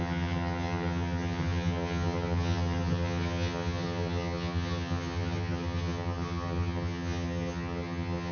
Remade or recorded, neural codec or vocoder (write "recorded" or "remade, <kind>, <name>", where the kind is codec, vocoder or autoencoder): remade, vocoder, HiFi-GAN